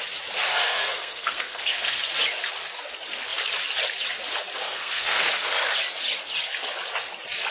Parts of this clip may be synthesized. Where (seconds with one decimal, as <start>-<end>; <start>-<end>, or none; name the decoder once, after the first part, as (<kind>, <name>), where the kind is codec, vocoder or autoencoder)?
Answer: 0.5-2.0 (codec, SNAC); 4.6-5.3